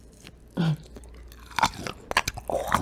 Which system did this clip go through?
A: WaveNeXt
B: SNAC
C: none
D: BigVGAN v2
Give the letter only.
C